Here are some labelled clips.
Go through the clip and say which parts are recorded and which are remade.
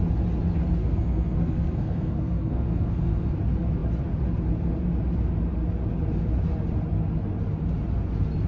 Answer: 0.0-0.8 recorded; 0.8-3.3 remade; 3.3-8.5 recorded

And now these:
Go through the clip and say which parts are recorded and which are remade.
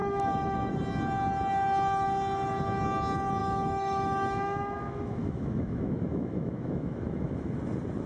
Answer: 0.0-0.7 remade; 0.7-3.4 recorded; 3.4-7.6 remade; 7.6-8.1 recorded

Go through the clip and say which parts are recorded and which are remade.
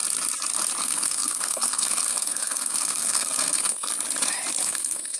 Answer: 0.0-0.8 recorded; 0.8-3.9 remade; 3.9-4.6 recorded; 4.6-5.2 remade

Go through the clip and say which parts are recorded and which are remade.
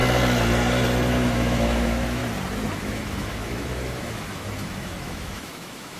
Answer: 0.0-1.1 recorded; 1.1-2.2 remade; 2.2-2.7 recorded; 2.7-6.0 remade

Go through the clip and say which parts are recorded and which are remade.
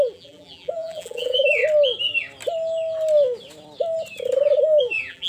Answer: 0.0-1.6 remade; 1.6-4.8 recorded; 4.8-5.3 remade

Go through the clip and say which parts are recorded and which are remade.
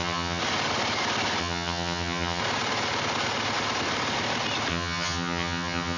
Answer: 0.0-0.4 remade; 0.4-1.4 recorded; 1.4-2.4 remade; 2.4-4.7 recorded; 4.7-6.0 remade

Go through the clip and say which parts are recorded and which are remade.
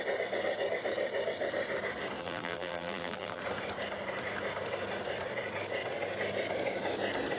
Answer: 0.0-2.2 recorded; 2.2-3.4 remade; 3.4-7.4 recorded